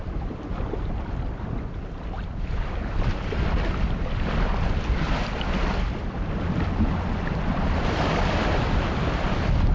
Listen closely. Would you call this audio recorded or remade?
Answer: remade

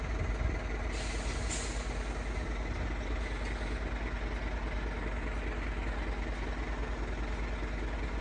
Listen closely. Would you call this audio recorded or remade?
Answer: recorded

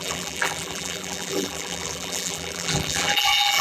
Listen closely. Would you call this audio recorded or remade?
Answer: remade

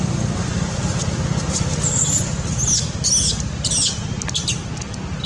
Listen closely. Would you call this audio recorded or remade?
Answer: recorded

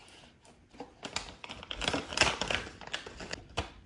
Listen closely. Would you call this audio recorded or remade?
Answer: recorded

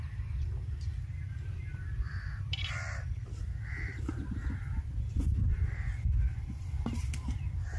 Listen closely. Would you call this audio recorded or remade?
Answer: remade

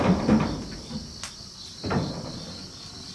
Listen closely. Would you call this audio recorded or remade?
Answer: recorded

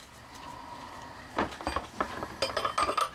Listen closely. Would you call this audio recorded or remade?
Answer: recorded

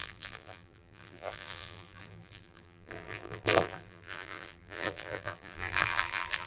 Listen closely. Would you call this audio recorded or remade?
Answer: remade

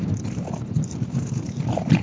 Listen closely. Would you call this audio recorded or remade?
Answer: remade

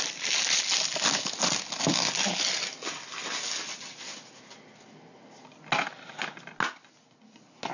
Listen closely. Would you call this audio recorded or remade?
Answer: recorded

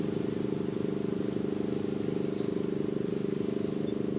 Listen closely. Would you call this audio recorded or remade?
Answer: recorded